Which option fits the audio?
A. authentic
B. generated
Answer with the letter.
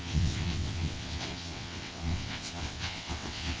B